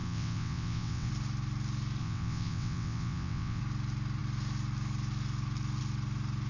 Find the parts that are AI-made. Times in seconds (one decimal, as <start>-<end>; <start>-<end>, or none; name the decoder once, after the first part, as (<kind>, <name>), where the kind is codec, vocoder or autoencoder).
0.0-1.1 (vocoder, WaveNeXt); 2.0-3.6